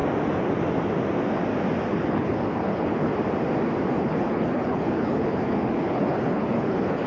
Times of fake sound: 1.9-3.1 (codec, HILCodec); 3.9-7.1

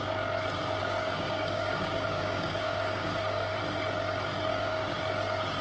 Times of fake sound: 0.8-3.6 (codec, DAC); 4.5-5.0

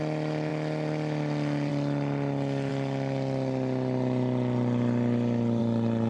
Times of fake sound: none

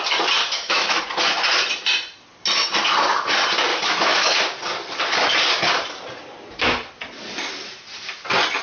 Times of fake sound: 0.4-1.0 (autoencoder, DAC-VAE); 3.7-4.4

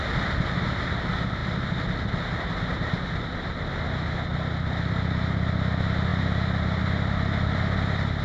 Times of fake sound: none

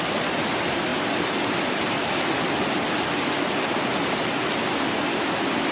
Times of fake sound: none

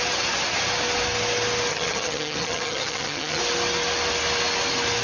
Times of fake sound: 1.7-3.4 (vocoder, HiFi-GAN)